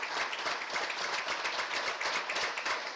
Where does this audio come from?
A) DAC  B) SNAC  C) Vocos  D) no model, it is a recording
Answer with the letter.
D